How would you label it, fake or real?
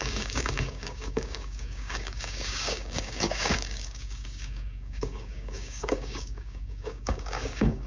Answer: fake